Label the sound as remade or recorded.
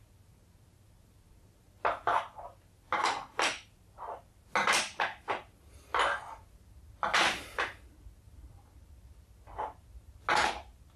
recorded